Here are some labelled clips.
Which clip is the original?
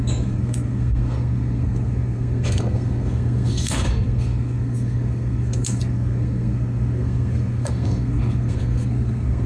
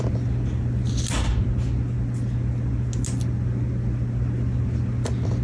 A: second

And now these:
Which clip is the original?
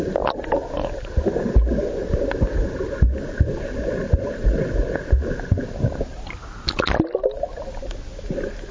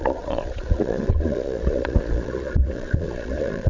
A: first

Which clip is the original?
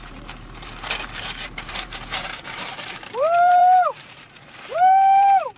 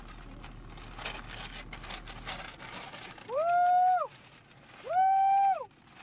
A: second